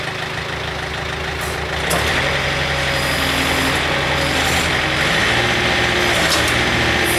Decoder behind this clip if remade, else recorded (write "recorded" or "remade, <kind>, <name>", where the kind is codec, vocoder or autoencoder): recorded